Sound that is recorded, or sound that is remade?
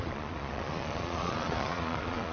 remade